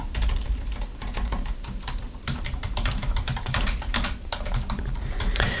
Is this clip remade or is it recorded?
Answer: remade